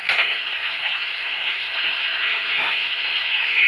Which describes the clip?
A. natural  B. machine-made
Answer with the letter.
B